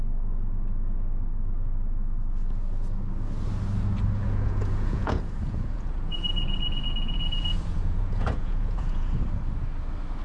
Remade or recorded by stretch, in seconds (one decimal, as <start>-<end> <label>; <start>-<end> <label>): 0.0-4.2 recorded; 4.2-9.2 remade; 9.2-10.2 recorded

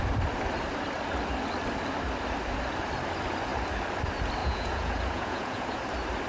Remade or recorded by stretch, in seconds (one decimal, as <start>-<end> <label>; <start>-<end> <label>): 0.0-4.4 recorded; 4.4-5.8 remade; 5.8-6.3 recorded

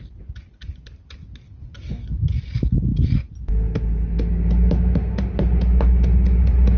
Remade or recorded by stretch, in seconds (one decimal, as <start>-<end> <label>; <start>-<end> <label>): 0.0-6.8 recorded

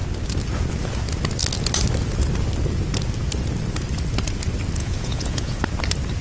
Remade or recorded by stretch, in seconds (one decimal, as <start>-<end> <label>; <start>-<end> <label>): 0.0-4.8 recorded; 4.8-5.6 remade; 5.6-6.2 recorded

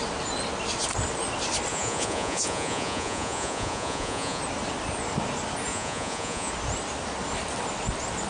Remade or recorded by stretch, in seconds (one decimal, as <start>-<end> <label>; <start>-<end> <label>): 0.0-1.7 recorded; 1.7-4.4 remade; 4.4-5.7 recorded; 5.7-6.5 remade; 6.5-8.3 recorded